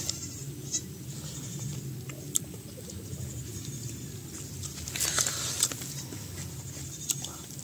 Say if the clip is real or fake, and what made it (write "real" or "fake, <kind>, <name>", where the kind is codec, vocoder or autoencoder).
real